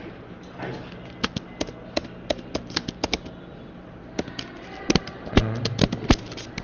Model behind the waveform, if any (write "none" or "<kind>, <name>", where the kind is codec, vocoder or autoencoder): none